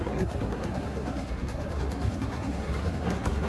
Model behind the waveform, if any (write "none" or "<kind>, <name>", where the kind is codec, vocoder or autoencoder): codec, SNAC